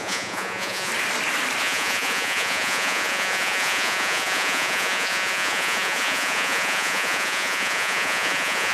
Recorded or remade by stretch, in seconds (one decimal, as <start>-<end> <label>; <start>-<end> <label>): 0.0-0.9 remade; 0.9-1.6 recorded; 1.6-8.7 remade